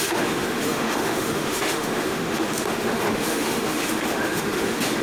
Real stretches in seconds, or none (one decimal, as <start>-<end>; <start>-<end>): none